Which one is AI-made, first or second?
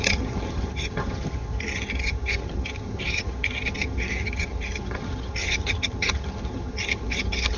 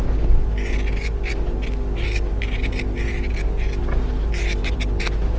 first